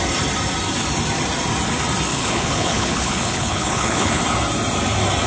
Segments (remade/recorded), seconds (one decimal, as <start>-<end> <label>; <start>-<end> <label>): 0.0-2.1 recorded; 2.1-4.2 remade; 4.2-5.3 recorded

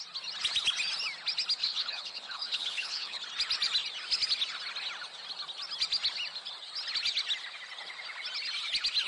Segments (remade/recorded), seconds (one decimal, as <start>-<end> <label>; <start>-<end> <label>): 0.0-1.6 recorded; 1.6-3.2 remade; 3.2-9.1 recorded